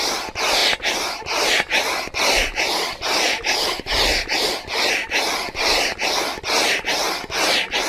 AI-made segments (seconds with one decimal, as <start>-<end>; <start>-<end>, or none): none